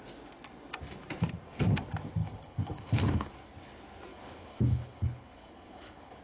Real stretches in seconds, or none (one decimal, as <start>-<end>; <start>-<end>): 0.0-2.2; 3.3-4.1